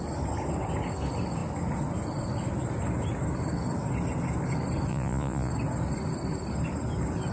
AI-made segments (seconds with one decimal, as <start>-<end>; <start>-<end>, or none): 4.9-5.5